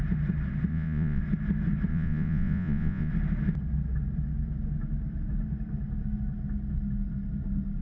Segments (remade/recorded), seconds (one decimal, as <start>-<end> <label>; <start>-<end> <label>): 0.0-0.7 recorded; 0.7-1.2 remade; 1.2-1.9 recorded; 1.9-3.1 remade; 3.1-7.8 recorded